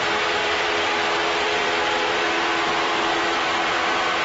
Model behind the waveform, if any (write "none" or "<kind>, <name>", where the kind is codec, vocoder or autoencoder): vocoder, BigVGAN v2